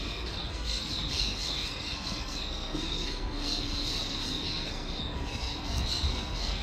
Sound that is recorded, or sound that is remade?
remade